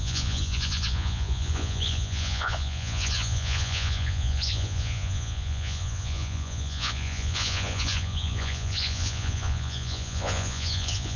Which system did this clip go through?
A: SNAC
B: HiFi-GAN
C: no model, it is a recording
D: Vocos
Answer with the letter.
D